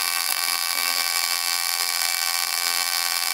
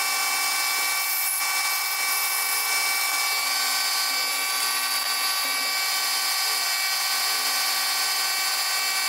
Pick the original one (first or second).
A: second